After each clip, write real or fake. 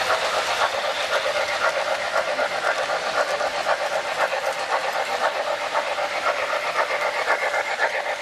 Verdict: fake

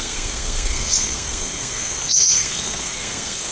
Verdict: fake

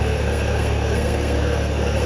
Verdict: fake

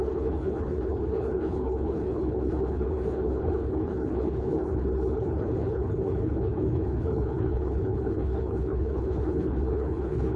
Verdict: fake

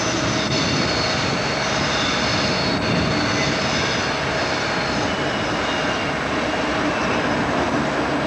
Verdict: real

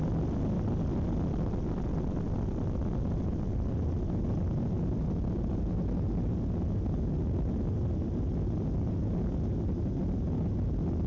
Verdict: real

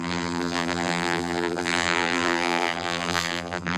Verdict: fake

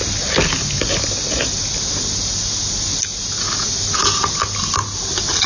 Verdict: real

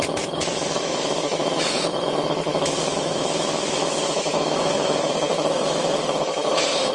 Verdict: fake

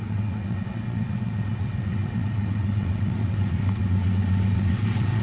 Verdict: fake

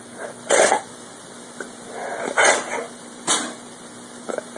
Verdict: real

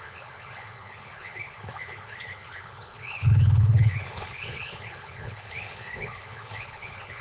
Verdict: fake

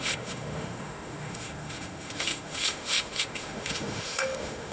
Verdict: fake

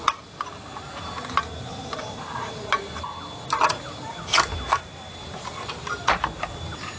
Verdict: real